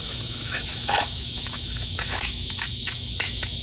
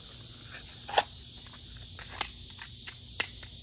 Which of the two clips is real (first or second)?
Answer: second